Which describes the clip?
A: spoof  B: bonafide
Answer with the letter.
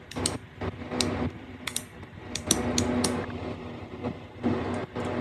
B